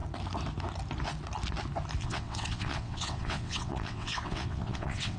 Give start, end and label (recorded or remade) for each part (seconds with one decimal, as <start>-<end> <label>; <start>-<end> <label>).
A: 0.0-2.0 recorded; 2.0-5.2 remade